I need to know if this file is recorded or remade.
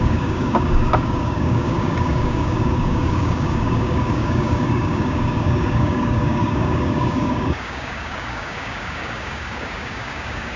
remade